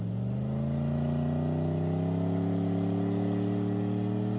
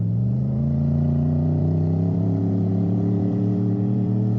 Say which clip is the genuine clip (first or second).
first